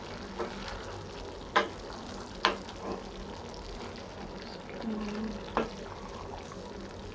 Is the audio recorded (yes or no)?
yes